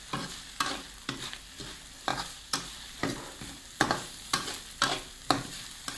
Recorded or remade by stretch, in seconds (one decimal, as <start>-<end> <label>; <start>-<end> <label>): 0.0-6.0 recorded